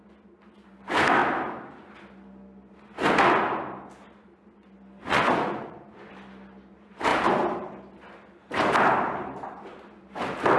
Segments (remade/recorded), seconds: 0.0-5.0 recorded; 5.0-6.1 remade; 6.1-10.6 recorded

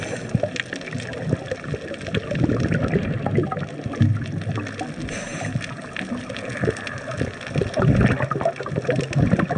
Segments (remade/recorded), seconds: 0.0-9.6 recorded

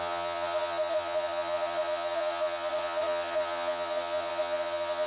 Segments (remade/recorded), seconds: 0.0-5.1 remade

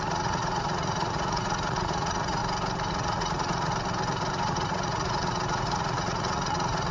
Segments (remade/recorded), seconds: 0.0-2.4 remade; 2.4-2.9 recorded; 2.9-3.7 remade; 3.7-4.3 recorded; 4.3-6.9 remade

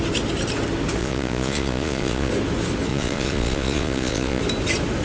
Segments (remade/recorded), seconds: 0.0-1.0 recorded; 1.0-2.3 remade; 2.3-2.9 recorded; 2.9-4.4 remade; 4.4-5.0 recorded